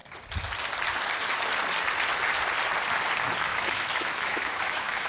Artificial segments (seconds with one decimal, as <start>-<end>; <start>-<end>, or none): 3.5-5.1